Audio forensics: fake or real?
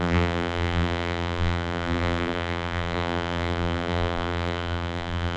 fake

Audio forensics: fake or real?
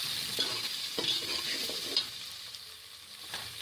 real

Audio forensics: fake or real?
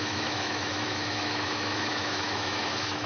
fake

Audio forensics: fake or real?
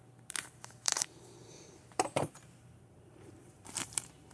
fake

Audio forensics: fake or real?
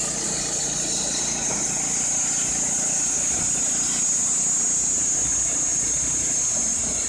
real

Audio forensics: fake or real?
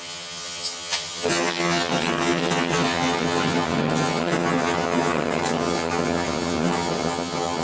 fake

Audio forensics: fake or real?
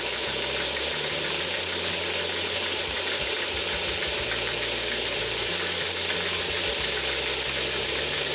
real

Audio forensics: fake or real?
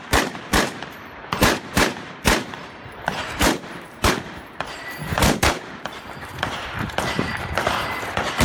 fake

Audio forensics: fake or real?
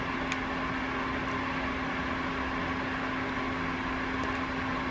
real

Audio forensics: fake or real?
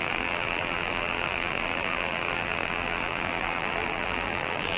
fake